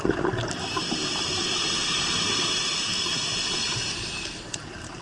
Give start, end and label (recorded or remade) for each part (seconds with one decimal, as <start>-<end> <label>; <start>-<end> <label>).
0.0-5.0 recorded